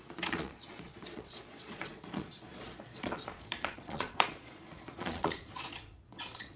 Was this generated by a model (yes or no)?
yes